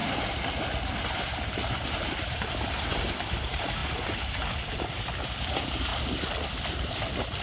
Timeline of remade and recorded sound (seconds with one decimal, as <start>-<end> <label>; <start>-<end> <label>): 0.0-1.7 recorded; 1.7-5.9 remade; 5.9-6.7 recorded; 6.7-7.4 remade